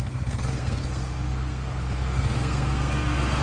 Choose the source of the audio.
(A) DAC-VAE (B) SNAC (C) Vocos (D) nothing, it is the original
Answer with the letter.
B